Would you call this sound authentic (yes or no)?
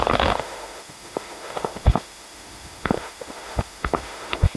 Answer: no